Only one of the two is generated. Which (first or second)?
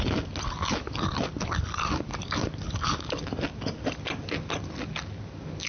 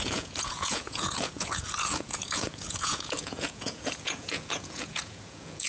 second